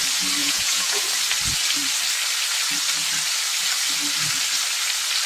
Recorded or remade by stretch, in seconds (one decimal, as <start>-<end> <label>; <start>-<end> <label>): 0.0-0.4 recorded; 0.4-1.0 remade; 1.0-5.3 recorded